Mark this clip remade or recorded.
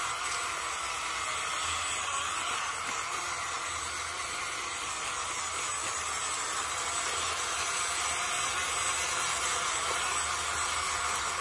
recorded